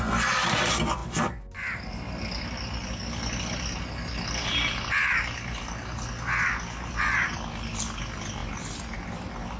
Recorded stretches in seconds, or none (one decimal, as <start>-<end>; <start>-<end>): 0.0-9.6